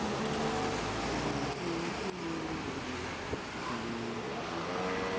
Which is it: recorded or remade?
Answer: recorded